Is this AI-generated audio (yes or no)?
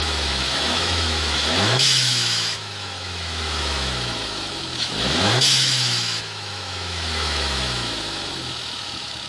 yes